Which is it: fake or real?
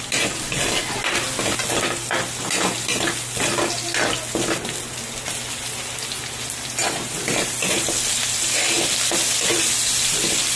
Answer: real